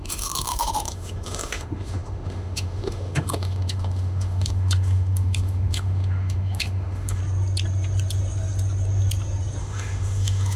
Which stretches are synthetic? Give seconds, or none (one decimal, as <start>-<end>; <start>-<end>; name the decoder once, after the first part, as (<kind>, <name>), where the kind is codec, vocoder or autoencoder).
0.0-7.2 (autoencoder, DAC-VAE); 9.6-10.6